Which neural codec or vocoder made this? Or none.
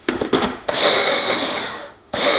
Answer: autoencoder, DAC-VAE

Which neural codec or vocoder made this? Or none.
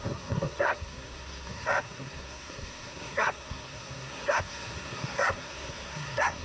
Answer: codec, SNAC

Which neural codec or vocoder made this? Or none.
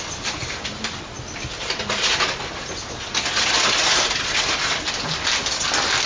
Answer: none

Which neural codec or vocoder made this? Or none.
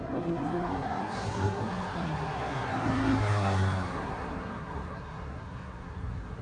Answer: codec, SNAC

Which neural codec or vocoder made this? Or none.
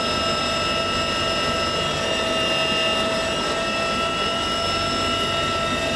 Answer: none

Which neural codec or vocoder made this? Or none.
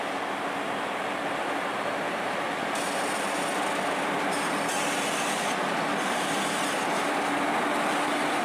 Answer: none